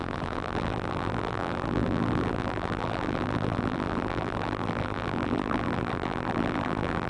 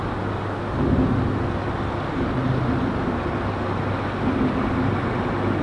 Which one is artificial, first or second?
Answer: first